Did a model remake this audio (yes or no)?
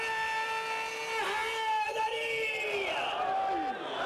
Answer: no